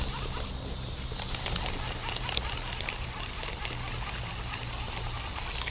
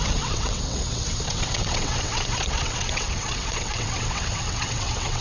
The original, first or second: first